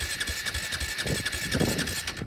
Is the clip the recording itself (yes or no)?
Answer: yes